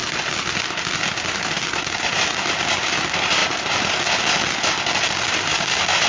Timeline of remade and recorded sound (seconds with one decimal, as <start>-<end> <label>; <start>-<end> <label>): 0.0-6.1 recorded